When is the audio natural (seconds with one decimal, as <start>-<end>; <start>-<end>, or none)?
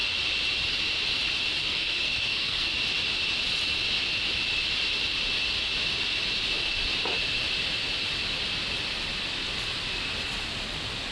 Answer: 0.0-1.6; 2.7-11.1